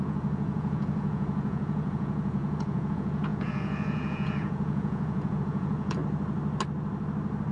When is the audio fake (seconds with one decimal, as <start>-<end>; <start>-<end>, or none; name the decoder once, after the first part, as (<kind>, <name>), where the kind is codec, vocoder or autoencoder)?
0.0-6.0 (vocoder, Vocos)